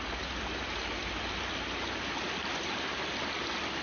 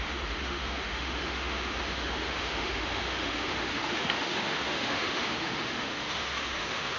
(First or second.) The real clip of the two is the first